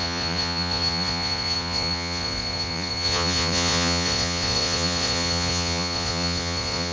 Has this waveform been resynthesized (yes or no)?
yes